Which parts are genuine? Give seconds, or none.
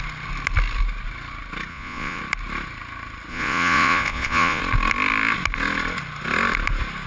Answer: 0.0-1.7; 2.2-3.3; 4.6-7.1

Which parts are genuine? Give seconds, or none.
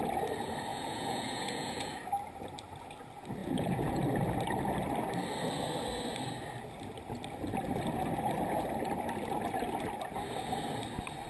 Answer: 0.0-0.7; 1.9-3.4; 4.0-11.3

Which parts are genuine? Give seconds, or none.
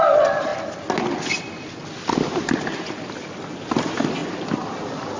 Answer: 0.0-5.2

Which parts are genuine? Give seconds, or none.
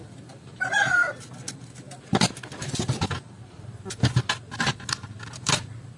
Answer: 0.0-6.0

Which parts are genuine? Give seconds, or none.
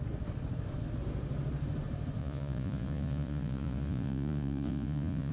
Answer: 0.0-2.2